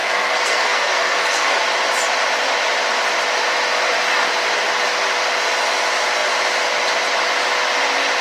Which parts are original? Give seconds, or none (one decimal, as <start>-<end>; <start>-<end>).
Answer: 1.6-8.2

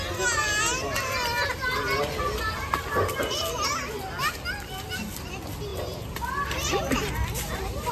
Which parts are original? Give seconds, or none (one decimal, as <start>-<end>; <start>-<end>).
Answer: 0.0-7.9

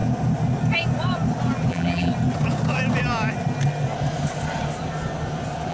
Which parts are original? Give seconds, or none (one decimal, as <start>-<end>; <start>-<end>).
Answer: 0.0-1.7; 2.1-5.7

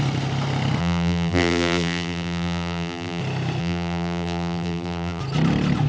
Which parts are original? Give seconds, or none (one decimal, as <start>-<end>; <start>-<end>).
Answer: 0.0-0.8; 3.2-3.6; 5.2-5.9